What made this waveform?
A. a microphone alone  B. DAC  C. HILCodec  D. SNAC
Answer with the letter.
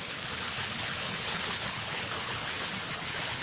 C